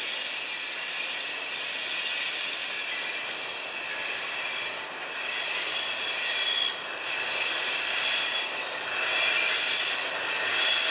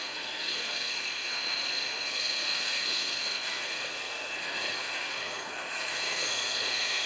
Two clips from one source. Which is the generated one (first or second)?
second